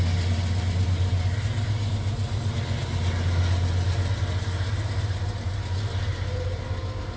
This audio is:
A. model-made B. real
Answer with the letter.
B